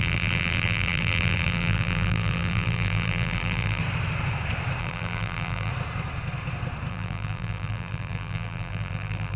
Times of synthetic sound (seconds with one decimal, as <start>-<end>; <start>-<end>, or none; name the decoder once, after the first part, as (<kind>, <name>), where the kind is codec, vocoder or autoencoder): 0.0-3.8 (vocoder, BigVGAN v2); 4.8-5.7; 6.9-9.4